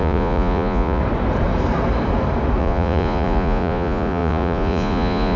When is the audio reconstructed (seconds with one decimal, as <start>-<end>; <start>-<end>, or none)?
0.0-1.0; 2.6-5.4